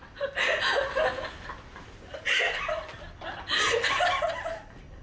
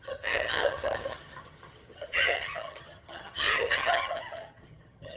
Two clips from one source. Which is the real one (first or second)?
first